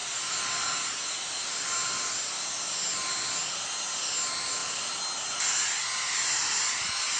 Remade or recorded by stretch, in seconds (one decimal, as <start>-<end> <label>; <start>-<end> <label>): 0.0-7.2 recorded

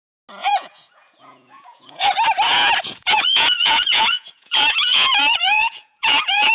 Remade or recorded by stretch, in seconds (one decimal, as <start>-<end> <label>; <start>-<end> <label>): 0.0-0.4 recorded; 0.4-2.1 remade; 2.1-2.5 recorded; 2.5-6.5 remade

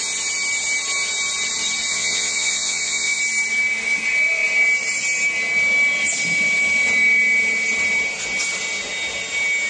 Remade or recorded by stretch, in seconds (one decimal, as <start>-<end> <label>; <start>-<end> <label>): 0.0-1.9 recorded; 1.9-3.2 remade; 3.2-9.7 recorded

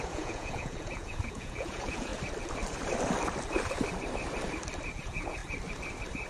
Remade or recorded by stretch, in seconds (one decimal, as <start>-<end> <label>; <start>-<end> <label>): 0.0-2.1 remade; 2.1-4.9 recorded; 4.9-5.4 remade; 5.4-6.3 recorded

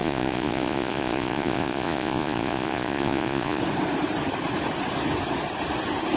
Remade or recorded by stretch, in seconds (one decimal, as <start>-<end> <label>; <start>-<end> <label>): 0.0-3.6 remade; 3.6-6.2 recorded

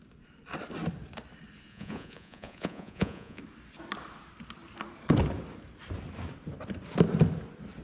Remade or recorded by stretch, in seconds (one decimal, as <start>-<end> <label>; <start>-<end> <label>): 0.0-1.7 recorded; 1.7-3.4 remade; 3.4-7.8 recorded

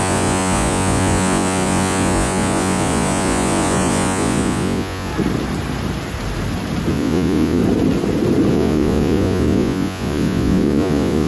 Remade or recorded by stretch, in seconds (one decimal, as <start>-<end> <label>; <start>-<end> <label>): 0.0-5.1 remade; 5.1-6.9 recorded; 6.9-7.6 remade; 7.6-8.5 recorded; 8.5-11.3 remade